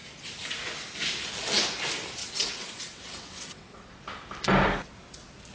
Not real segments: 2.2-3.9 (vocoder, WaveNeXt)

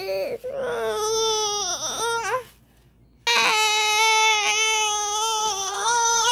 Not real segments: 5.4-6.3 (codec, SNAC)

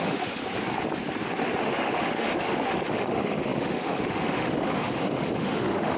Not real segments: 0.0-0.4 (autoencoder, DAC-VAE); 1.6-6.0